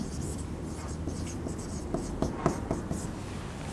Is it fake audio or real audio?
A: real